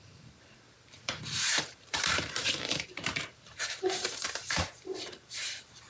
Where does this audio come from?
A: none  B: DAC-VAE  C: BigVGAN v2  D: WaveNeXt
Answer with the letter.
C